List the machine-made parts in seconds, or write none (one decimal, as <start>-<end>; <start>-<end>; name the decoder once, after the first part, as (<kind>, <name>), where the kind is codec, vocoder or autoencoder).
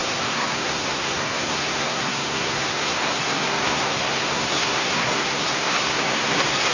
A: 0.0-6.7 (codec, SNAC)